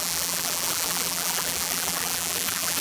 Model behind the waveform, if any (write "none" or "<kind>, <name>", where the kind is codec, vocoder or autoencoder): vocoder, BigVGAN v2